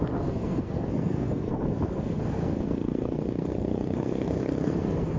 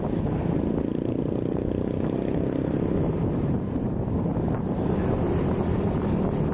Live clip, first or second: second